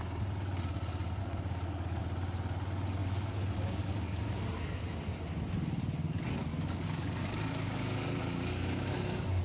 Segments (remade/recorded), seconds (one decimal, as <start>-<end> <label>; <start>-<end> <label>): 0.0-1.2 recorded; 1.2-2.0 remade; 2.0-3.0 recorded; 3.0-4.2 remade; 4.2-6.5 recorded; 6.5-9.4 remade